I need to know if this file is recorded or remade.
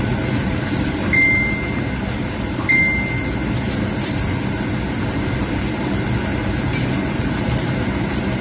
recorded